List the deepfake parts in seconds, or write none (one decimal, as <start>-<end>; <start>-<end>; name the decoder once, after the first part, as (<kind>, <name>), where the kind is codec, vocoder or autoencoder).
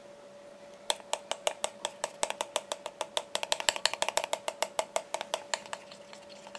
none